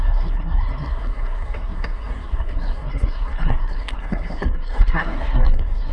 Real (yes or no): no